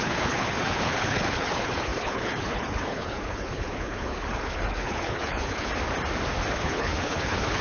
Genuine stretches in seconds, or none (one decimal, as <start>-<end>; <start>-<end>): 5.7-6.5